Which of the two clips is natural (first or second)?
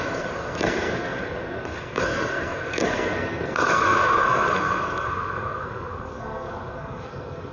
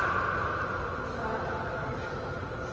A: second